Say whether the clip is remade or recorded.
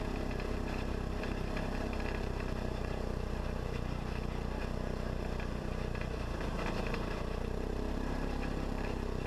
remade